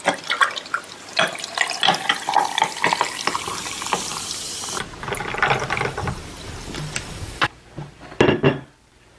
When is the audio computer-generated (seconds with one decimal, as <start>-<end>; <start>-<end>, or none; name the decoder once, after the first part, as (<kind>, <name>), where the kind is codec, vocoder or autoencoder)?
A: 4.1-4.7 (vocoder, BigVGAN v2)